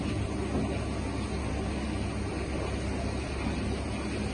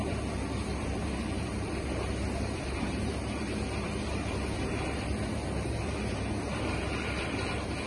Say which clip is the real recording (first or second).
first